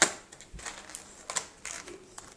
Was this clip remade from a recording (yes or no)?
no